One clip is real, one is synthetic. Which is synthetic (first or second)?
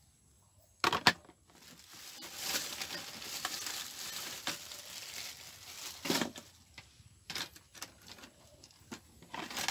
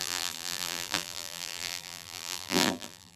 second